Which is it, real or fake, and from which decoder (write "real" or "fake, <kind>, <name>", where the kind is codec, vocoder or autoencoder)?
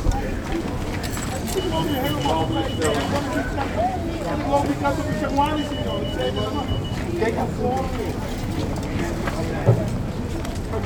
real